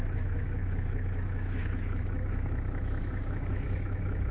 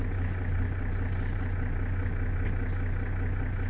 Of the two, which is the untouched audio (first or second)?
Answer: second